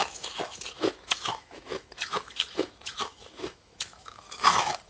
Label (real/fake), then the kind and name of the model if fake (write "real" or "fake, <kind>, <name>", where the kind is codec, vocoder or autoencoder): fake, autoencoder, DAC-VAE